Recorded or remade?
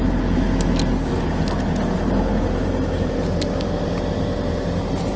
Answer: recorded